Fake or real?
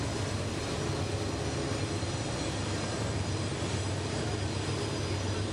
real